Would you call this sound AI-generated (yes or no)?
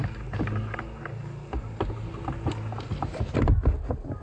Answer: no